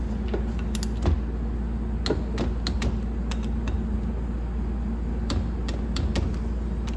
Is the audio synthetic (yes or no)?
no